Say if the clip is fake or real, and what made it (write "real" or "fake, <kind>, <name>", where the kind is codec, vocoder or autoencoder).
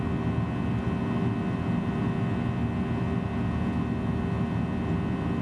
real